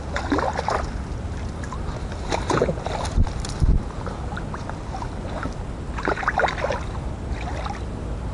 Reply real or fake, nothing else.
real